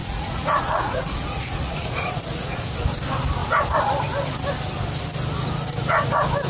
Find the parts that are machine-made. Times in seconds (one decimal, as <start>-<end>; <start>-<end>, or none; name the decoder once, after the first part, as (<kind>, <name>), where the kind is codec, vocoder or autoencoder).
0.0-2.6 (vocoder, Vocos)